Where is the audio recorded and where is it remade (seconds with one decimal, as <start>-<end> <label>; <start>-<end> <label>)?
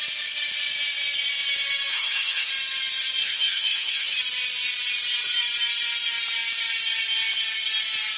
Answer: 0.0-1.9 recorded; 1.9-2.5 remade; 2.5-3.2 recorded; 3.2-4.2 remade; 4.2-8.2 recorded